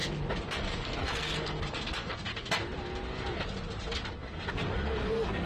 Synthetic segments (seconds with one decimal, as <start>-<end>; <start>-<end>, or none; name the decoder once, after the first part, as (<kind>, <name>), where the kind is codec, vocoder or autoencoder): 0.5-2.3 (codec, SNAC); 4.5-5.5